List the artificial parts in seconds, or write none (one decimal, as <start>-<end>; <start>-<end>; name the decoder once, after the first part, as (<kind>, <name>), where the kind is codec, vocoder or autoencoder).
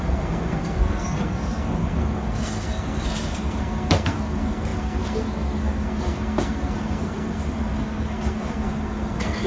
0.0-9.5 (codec, SNAC)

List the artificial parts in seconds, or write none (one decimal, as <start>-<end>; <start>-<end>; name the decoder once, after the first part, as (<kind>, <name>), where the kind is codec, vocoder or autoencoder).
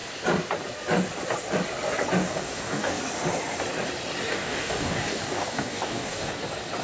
2.2-3.0 (codec, DAC); 4.3-6.3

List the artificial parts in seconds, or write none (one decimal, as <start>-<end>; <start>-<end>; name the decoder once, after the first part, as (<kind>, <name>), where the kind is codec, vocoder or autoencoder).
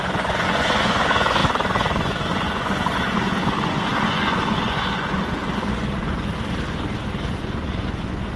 0.0-6.3 (vocoder, Vocos); 7.4-8.4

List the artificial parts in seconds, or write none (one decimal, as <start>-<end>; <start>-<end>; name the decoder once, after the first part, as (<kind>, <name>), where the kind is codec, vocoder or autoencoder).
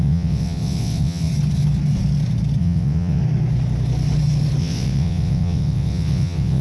0.0-1.3 (vocoder, WaveNeXt); 2.6-3.2; 4.6-6.6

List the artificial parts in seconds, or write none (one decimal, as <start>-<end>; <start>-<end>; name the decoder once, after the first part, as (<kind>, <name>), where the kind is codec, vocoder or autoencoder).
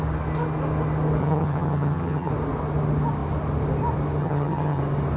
1.2-2.3 (vocoder, HiFi-GAN); 4.2-4.8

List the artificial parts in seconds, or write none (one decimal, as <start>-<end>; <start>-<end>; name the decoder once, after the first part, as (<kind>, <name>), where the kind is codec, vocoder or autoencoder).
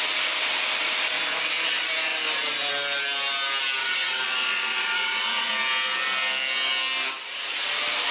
3.8-5.5 (vocoder, WaveNeXt)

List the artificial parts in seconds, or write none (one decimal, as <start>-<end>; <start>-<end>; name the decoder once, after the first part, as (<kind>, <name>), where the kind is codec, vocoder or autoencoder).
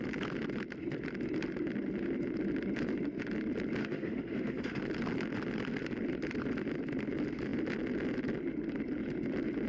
3.8-4.8 (autoencoder, DAC-VAE)